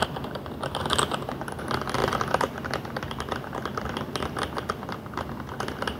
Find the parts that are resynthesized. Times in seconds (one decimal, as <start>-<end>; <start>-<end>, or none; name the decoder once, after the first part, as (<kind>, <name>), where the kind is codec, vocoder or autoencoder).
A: none